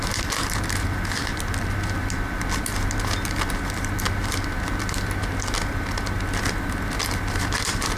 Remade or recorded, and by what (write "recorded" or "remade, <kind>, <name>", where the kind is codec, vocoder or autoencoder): recorded